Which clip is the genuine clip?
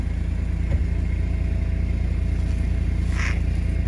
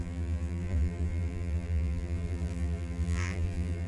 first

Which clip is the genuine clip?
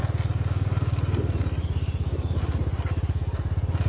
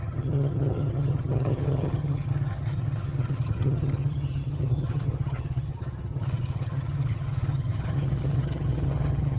first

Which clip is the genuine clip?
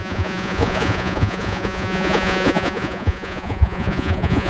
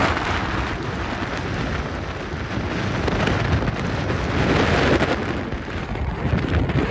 second